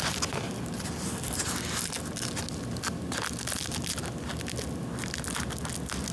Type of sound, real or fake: real